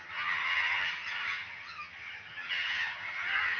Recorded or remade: remade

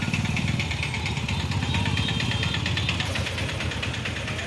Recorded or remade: recorded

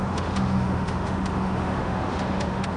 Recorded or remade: remade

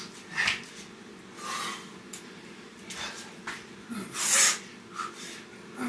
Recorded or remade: recorded